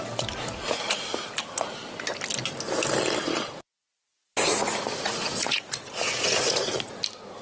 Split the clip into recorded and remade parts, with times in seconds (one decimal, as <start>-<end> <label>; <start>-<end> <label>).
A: 0.0-4.5 recorded; 4.5-7.0 remade; 7.0-7.4 recorded